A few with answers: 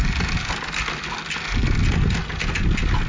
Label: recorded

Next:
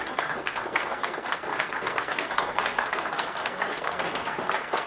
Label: remade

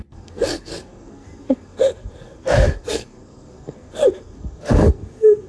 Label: remade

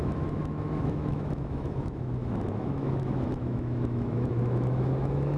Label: remade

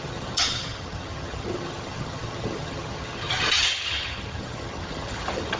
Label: remade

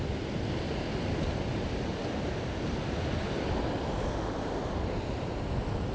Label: recorded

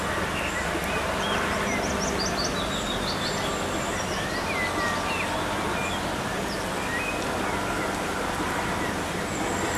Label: recorded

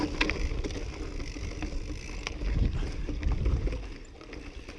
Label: recorded